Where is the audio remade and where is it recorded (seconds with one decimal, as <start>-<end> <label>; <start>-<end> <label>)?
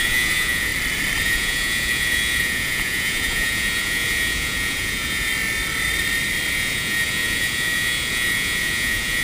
0.0-0.7 remade; 0.7-1.2 recorded; 1.2-5.3 remade; 5.3-6.5 recorded; 6.5-9.2 remade